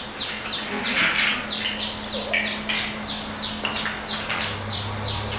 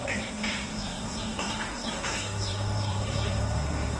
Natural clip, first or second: first